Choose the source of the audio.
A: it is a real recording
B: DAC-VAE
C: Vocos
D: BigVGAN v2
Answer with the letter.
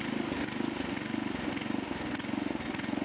A